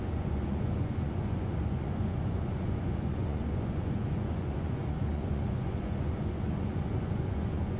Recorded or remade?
remade